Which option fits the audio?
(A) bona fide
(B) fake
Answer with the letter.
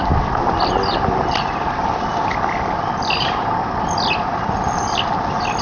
A